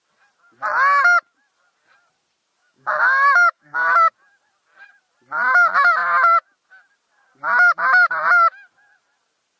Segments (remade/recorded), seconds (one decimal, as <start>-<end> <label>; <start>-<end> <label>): 0.0-2.6 recorded; 2.6-4.1 remade; 4.1-9.6 recorded